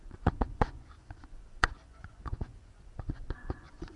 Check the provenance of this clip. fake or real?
fake